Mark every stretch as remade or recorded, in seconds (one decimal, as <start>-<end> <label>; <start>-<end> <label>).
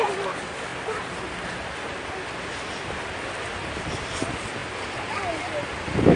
0.0-6.2 recorded